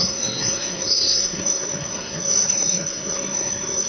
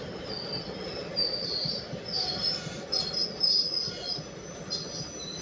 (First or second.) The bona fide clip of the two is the second